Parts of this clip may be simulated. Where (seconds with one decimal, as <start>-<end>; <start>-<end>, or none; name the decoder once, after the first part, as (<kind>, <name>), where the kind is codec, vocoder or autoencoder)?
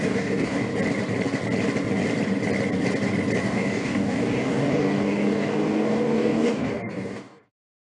0.0-0.7 (codec, DAC); 3.4-7.9